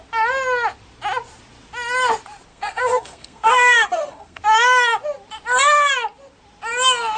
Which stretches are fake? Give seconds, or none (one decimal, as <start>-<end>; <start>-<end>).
2.5-4.4